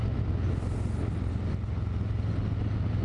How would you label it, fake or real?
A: real